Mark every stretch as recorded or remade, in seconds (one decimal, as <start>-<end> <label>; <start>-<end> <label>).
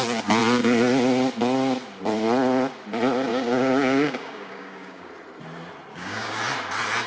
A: 0.0-3.3 recorded; 3.3-5.1 remade; 5.1-5.9 recorded; 5.9-6.4 remade; 6.4-7.1 recorded